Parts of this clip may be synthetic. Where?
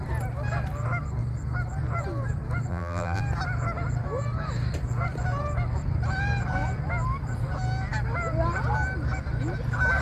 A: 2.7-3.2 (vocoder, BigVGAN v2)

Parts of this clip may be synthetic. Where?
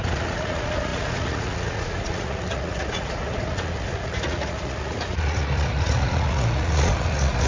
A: 0.0-7.5 (vocoder, Vocos)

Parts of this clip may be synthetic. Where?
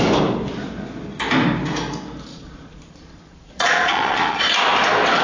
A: 2.3-4.4 (vocoder, Vocos)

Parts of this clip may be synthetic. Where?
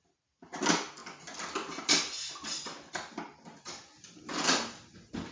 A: none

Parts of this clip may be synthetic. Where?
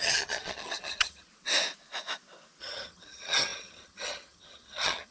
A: 0.0-1.3 (vocoder, HiFi-GAN); 2.6-5.1